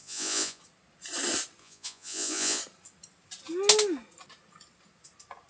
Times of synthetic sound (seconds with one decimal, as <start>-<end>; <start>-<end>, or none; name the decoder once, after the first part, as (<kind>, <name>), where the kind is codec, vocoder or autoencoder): 0.0-0.6 (vocoder, Vocos); 1.6-2.6